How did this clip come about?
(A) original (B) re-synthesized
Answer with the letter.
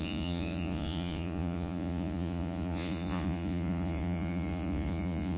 B